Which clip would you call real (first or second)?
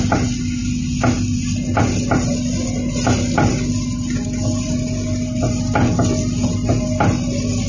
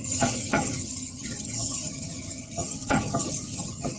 first